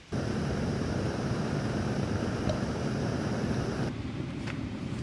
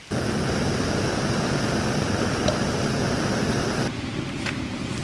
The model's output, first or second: first